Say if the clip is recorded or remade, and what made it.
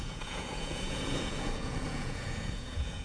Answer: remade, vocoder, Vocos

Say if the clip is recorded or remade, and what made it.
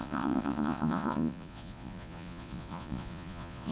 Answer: remade, vocoder, Vocos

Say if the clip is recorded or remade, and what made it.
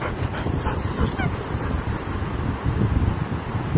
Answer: recorded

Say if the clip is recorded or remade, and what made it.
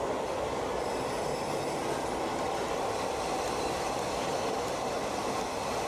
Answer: recorded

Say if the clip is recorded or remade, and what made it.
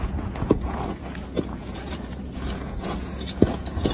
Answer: remade, vocoder, Vocos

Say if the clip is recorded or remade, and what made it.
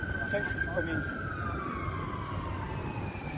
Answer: recorded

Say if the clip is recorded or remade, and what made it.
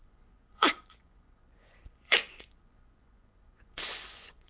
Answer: remade, vocoder, Vocos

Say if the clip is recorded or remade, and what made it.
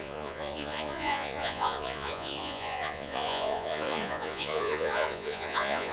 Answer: remade, vocoder, Vocos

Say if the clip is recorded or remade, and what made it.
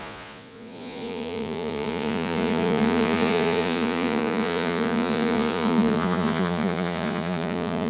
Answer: remade, vocoder, Vocos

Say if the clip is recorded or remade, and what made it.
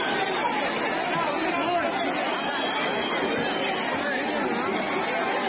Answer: recorded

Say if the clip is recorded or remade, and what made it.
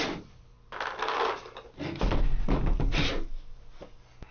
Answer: recorded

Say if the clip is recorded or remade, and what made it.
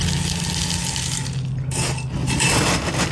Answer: recorded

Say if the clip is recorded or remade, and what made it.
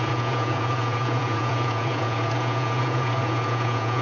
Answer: remade, vocoder, Vocos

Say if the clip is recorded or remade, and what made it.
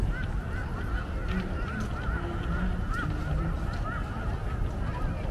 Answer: recorded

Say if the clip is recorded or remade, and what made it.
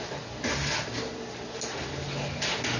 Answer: recorded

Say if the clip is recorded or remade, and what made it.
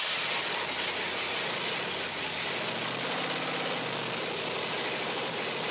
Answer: recorded